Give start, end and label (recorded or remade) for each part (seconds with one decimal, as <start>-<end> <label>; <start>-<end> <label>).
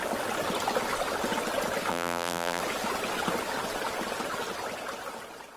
0.0-1.9 recorded; 1.9-2.6 remade; 2.6-5.6 recorded